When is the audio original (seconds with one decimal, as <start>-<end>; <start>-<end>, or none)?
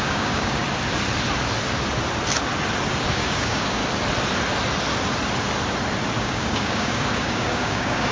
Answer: 0.6-3.1; 3.8-6.2